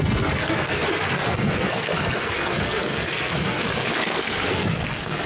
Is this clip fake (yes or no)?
yes